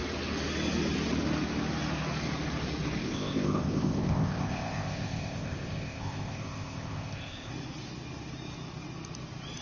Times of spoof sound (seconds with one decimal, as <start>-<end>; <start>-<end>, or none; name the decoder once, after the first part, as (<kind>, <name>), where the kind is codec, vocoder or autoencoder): 3.0-7.5 (codec, ZipCodec)

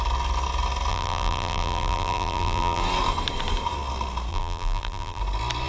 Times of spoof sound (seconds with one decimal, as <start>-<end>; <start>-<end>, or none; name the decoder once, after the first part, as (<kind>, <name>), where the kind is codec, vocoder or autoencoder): 0.9-2.8 (vocoder, BigVGAN v2); 4.3-5.2

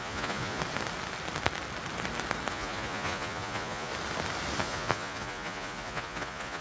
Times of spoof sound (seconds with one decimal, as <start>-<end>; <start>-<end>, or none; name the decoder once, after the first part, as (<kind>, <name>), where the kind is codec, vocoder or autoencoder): 0.0-0.6 (vocoder, Vocos); 2.5-3.9; 4.6-6.6

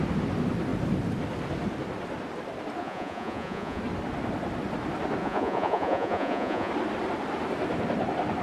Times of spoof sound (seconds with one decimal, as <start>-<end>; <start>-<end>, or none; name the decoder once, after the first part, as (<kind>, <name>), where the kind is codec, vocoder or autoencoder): 2.8-3.8 (vocoder, Vocos); 5.2-6.7

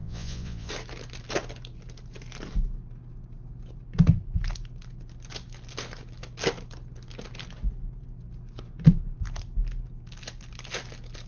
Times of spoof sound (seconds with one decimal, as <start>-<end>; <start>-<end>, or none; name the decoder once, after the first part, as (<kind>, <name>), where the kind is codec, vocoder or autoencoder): 0.0-0.7 (vocoder, Vocos)